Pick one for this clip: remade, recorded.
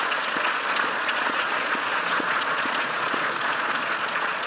remade